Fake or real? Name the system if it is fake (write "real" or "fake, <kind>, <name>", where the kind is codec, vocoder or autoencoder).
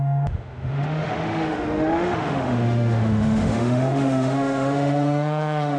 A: fake, autoencoder, DAC-VAE